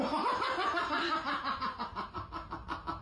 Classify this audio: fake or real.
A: real